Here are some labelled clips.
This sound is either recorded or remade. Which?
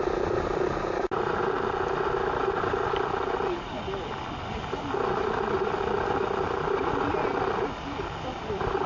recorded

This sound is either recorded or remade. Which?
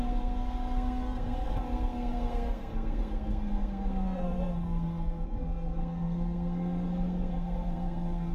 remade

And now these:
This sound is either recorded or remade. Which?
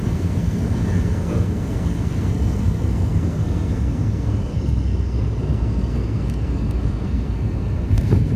remade